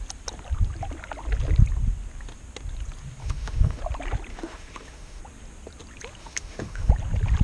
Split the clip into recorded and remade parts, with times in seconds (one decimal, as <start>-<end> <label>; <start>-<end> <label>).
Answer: 0.0-3.2 recorded; 3.2-3.8 remade; 3.8-4.3 recorded; 4.3-5.2 remade; 5.2-6.2 recorded; 6.2-6.9 remade; 6.9-7.4 recorded